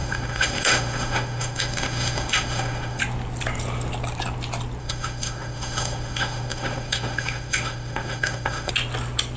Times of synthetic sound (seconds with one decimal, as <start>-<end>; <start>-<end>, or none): 0.0-3.0; 4.8-8.7